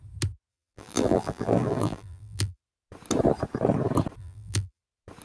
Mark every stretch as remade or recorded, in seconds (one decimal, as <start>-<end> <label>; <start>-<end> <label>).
0.0-0.5 recorded; 0.5-2.6 remade; 2.6-4.2 recorded; 4.2-4.8 remade; 4.8-5.2 recorded